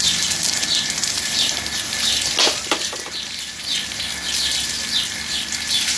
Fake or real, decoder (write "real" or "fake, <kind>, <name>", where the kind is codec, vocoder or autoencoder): real